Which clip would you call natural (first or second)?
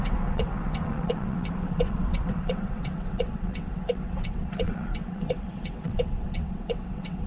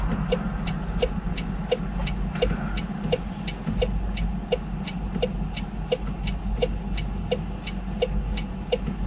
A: second